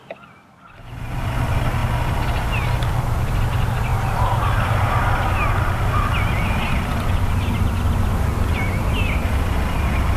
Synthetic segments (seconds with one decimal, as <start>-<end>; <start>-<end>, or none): 3.9-5.0